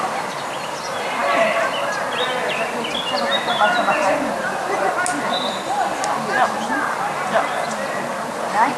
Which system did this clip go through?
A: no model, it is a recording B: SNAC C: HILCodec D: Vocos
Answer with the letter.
A